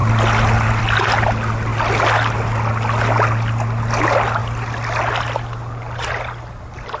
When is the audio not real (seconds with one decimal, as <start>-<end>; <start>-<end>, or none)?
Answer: none